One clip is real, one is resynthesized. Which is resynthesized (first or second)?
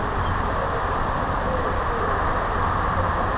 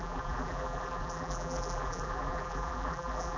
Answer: second